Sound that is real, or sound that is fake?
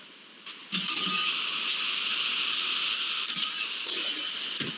real